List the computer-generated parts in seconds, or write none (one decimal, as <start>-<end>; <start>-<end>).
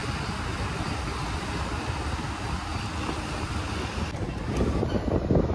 none